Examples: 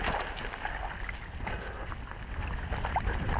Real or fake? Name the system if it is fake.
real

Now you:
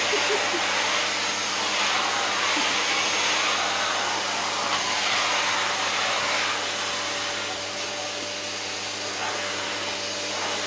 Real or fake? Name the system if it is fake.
real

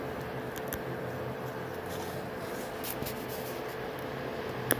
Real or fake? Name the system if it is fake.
real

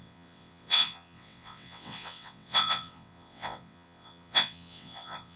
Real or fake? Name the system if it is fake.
fake, vocoder, WaveNeXt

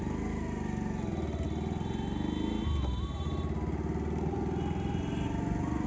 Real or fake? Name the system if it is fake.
real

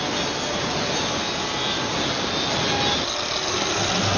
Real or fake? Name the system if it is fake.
real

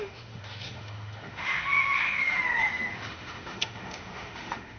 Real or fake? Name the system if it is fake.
fake, autoencoder, DAC-VAE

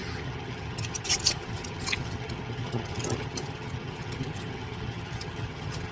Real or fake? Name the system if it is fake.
fake, vocoder, HiFi-GAN